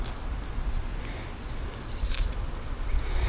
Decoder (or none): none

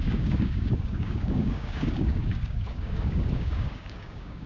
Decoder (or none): codec, DAC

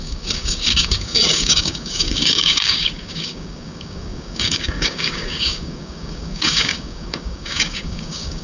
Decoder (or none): codec, DAC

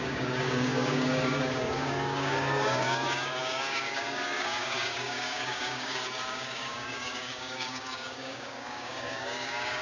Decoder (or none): codec, DAC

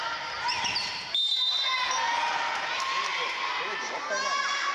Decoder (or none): none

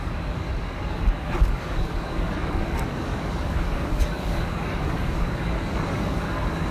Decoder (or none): codec, DAC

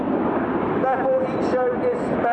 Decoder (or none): none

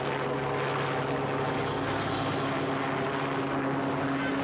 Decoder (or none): none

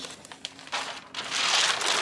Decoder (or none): none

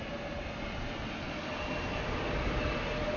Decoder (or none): none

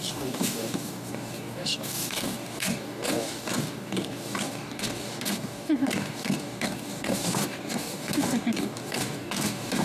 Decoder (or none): codec, DAC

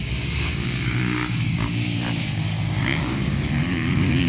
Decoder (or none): codec, DAC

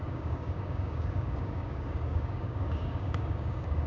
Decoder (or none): codec, DAC